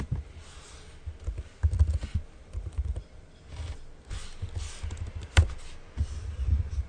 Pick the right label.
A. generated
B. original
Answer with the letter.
B